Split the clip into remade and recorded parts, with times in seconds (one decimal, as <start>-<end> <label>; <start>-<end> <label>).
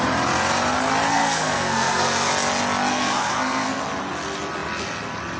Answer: 0.0-1.1 recorded; 1.1-2.3 remade; 2.3-2.9 recorded; 2.9-3.8 remade; 3.8-5.4 recorded